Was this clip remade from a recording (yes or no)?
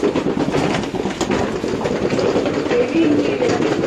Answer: no